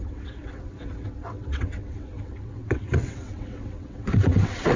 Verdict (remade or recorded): remade